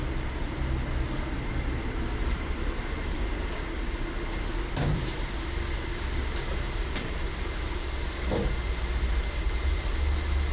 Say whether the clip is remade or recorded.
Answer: recorded